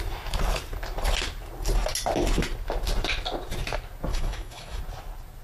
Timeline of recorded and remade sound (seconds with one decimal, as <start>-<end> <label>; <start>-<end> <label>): 0.0-4.1 recorded; 4.1-4.8 remade; 4.8-5.4 recorded